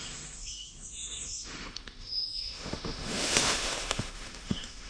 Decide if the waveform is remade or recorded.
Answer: remade